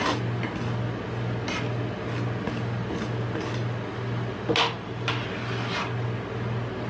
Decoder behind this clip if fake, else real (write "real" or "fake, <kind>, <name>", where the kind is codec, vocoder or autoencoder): real